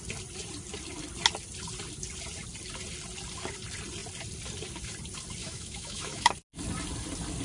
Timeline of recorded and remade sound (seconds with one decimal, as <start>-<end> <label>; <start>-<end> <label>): 0.0-5.4 recorded; 5.4-6.3 remade; 6.3-7.4 recorded